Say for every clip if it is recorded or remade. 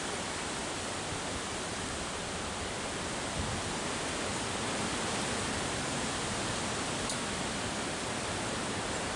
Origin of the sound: recorded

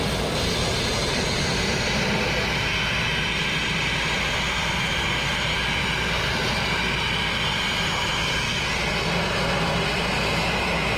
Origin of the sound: recorded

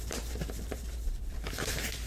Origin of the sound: remade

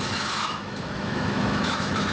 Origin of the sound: remade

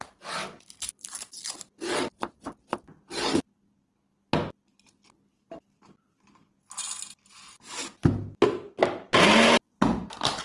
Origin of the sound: recorded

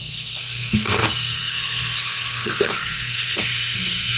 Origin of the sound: remade